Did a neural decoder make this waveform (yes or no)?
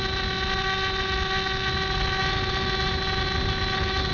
no